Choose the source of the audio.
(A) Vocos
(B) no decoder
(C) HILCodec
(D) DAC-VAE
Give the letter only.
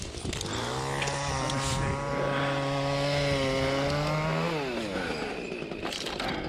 B